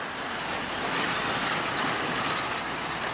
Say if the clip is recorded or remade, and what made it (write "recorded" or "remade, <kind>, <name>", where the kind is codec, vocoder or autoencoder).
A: recorded